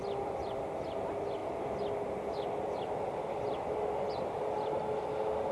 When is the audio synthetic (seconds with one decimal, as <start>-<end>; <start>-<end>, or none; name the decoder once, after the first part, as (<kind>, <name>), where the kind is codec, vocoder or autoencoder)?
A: 0.0-0.7 (vocoder, BigVGAN v2)